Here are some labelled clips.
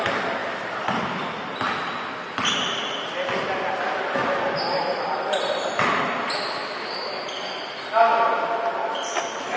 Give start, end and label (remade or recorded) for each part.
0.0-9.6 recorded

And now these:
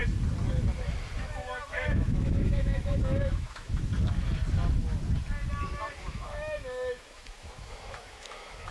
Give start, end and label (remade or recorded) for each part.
0.0-1.2 recorded; 1.2-3.9 remade; 3.9-6.0 recorded; 6.0-8.7 remade

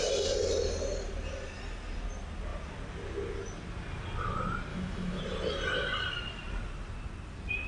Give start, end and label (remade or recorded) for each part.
0.0-4.7 recorded; 4.7-5.2 remade; 5.2-7.7 recorded